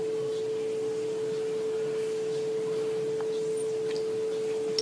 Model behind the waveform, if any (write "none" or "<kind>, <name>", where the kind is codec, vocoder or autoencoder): none